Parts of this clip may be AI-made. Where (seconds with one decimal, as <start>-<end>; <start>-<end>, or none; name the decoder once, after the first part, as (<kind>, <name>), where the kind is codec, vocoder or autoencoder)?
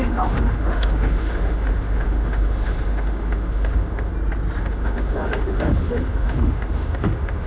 0.0-4.1 (autoencoder, DAC-VAE); 4.6-7.5